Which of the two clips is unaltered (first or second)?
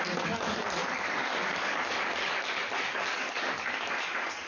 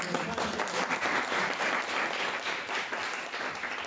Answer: second